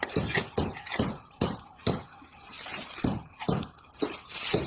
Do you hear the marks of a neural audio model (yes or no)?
no